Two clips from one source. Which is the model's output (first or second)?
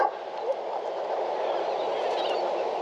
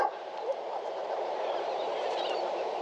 second